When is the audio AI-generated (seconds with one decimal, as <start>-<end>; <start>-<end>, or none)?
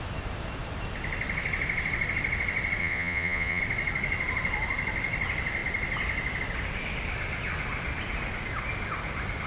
2.8-3.6